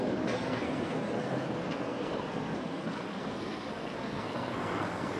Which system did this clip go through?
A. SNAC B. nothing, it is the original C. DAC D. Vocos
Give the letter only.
A